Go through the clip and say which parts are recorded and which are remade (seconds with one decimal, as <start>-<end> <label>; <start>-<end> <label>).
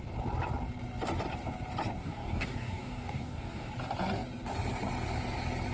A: 0.0-2.0 recorded; 2.0-3.7 remade; 3.7-5.7 recorded